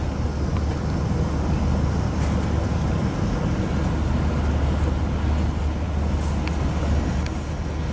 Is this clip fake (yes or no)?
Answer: no